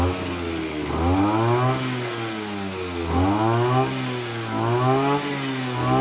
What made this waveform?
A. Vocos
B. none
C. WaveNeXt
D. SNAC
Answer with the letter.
B